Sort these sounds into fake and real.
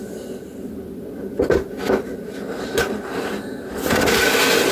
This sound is real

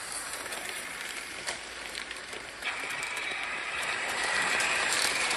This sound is fake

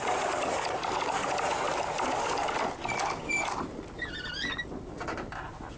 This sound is fake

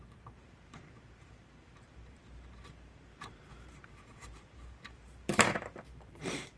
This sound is fake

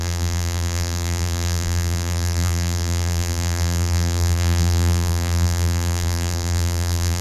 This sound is fake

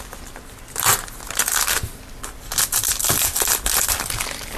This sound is real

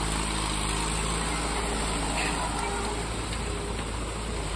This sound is real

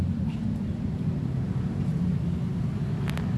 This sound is real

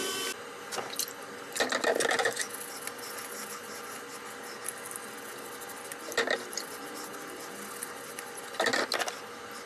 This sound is real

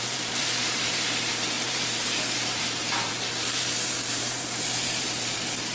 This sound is fake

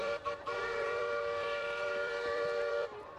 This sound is fake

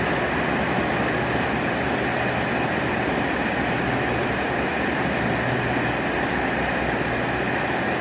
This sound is real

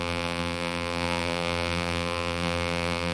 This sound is fake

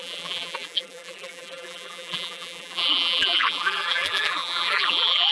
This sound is fake